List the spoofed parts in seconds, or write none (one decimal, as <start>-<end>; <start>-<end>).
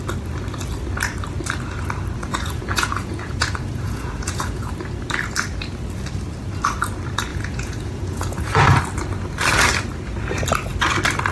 2.3-4.7; 7.3-8.8